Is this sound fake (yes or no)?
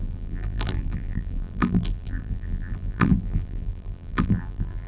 yes